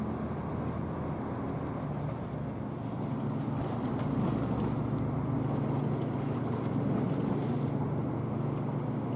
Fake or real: real